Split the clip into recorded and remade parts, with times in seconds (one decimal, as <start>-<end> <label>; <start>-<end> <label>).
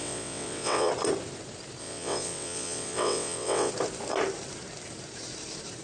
0.0-0.9 remade; 0.9-1.8 recorded; 1.8-3.7 remade; 3.7-5.8 recorded